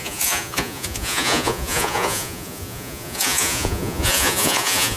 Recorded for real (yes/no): no